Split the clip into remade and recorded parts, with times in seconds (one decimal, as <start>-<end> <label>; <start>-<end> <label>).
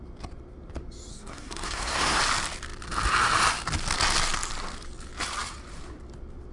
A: 0.0-1.1 recorded; 1.1-2.2 remade; 2.2-6.5 recorded